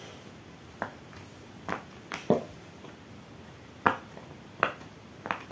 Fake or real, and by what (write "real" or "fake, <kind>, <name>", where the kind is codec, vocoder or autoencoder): real